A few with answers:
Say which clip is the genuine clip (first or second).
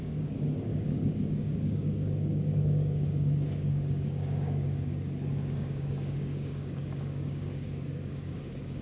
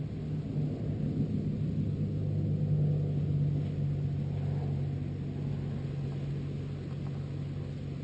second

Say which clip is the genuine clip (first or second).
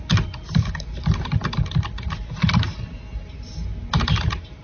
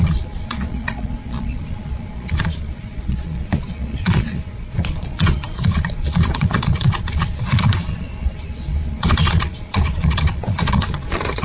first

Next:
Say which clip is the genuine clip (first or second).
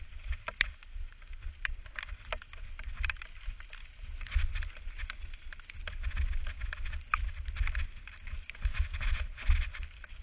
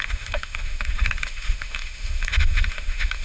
first